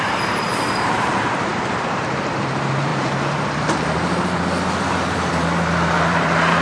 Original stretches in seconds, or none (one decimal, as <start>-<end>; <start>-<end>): none